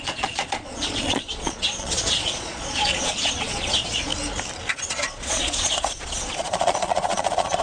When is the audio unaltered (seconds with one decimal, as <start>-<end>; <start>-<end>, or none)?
4.1-4.7